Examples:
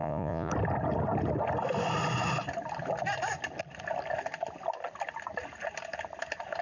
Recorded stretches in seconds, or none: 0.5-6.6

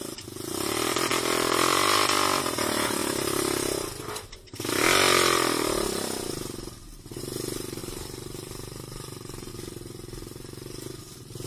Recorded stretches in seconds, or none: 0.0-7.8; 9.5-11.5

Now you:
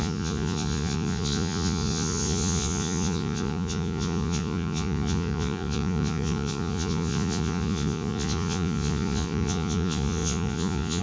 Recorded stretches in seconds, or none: none

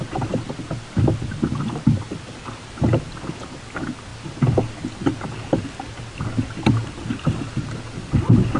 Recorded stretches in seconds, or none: 0.0-8.6

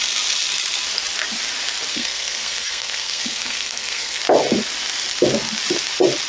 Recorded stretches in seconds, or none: 0.0-1.9; 4.2-6.3

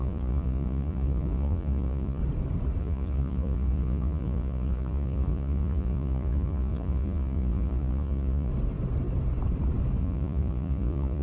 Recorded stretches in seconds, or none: 2.2-2.8; 8.5-10.0

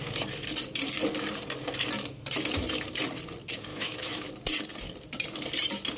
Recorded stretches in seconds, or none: 0.0-3.7; 4.3-6.0

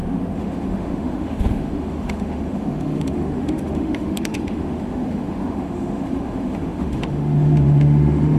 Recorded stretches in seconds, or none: none